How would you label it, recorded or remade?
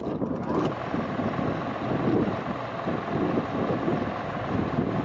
recorded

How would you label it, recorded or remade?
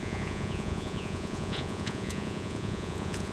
remade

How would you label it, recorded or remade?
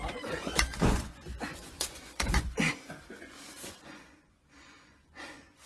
remade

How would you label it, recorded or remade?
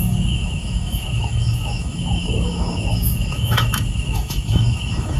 remade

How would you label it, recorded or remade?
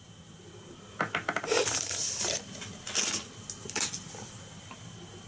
recorded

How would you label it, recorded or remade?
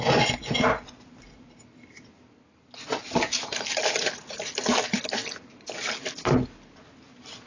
recorded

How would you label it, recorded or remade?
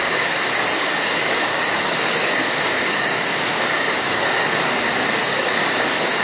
remade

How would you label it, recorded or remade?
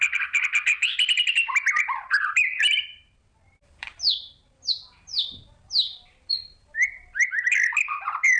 remade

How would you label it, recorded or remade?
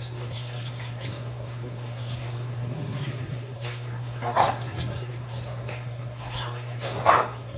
remade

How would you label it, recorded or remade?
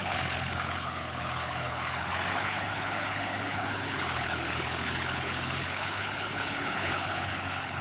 remade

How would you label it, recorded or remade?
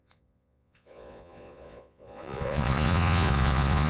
remade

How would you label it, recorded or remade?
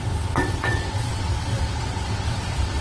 remade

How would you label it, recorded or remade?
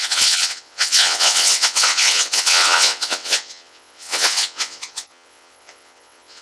remade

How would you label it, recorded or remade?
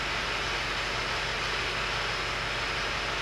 recorded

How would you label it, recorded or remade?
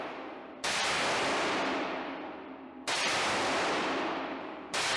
remade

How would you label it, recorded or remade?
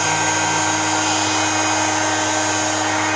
recorded